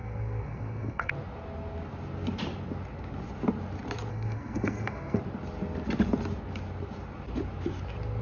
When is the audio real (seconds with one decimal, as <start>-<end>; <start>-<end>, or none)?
1.1-4.1; 5.2-8.2